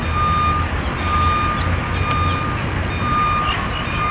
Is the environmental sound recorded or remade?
recorded